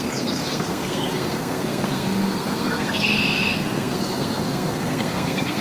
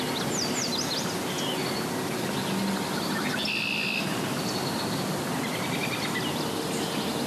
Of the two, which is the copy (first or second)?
first